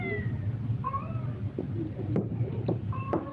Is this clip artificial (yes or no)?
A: yes